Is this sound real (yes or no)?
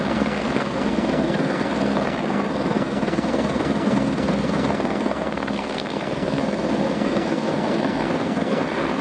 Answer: no